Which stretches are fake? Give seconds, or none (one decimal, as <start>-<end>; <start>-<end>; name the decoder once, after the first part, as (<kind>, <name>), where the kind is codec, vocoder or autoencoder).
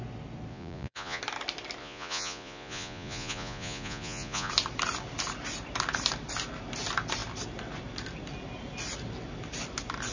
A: 0.5-1.2 (vocoder, Vocos); 1.8-4.5